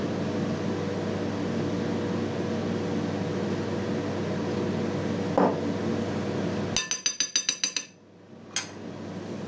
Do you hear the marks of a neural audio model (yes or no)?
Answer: no